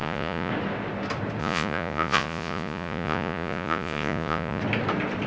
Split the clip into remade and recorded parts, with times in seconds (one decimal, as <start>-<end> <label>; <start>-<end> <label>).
0.0-0.5 remade; 0.5-1.4 recorded; 1.4-4.6 remade; 4.6-5.3 recorded